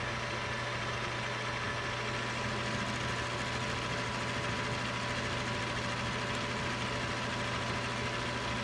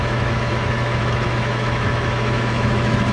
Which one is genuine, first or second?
first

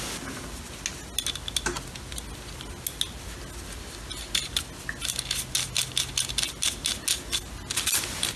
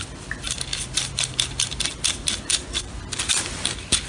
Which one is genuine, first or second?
first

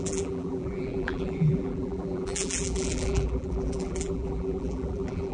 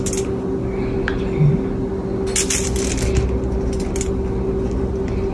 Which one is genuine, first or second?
second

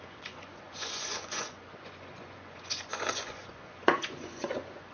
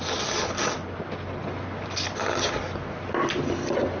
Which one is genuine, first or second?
second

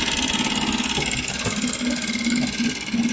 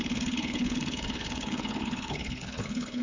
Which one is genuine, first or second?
first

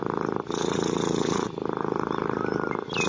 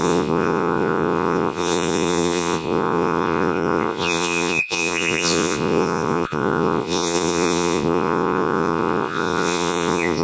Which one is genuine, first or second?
first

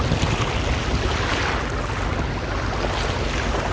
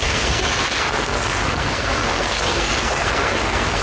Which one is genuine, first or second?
first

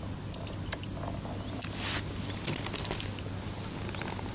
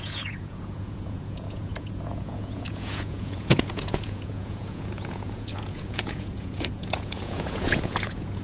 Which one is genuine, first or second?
first